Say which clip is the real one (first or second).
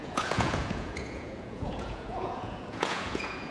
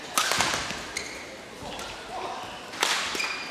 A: second